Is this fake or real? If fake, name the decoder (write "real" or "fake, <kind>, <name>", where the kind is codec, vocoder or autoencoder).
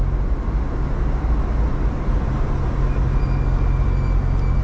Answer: real